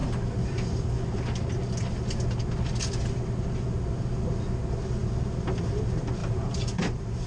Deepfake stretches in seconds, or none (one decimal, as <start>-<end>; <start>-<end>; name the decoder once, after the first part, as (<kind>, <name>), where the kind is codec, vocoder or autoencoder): 6.2-7.3 (vocoder, BigVGAN v2)